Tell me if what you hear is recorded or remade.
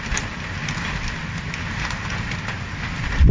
recorded